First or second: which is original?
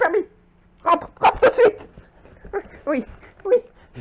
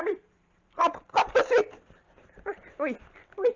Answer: first